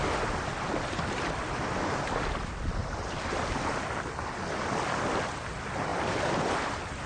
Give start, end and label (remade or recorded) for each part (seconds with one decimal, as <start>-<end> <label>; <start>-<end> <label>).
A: 0.0-7.1 recorded